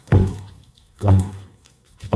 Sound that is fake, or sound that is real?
fake